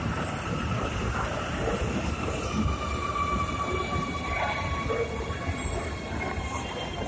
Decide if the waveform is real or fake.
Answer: fake